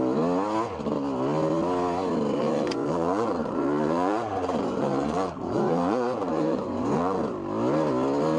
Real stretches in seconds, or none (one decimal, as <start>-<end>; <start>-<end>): 0.0-2.4; 7.2-8.4